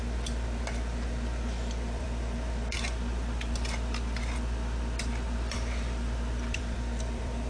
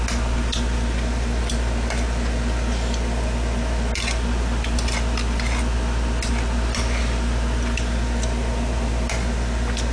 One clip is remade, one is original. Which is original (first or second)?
second